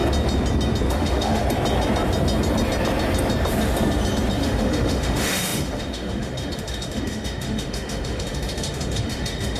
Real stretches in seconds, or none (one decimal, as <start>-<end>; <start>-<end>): 0.0-0.9; 1.4-4.4